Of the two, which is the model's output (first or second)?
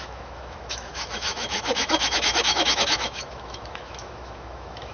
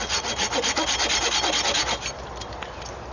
first